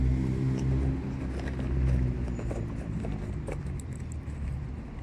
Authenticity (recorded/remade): recorded